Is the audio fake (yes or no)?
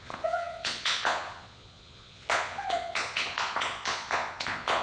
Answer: yes